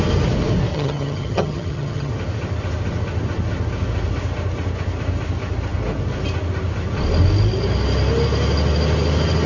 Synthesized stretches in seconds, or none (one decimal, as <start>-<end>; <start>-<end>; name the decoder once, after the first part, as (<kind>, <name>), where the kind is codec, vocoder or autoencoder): 0.7-2.1 (vocoder, HiFi-GAN)